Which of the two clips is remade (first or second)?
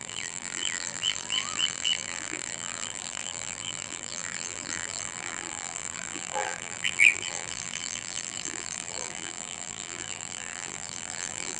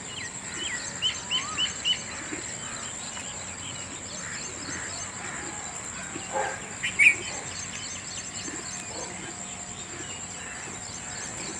first